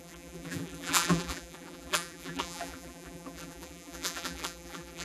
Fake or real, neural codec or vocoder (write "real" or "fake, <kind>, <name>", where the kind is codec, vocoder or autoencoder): fake, vocoder, BigVGAN v2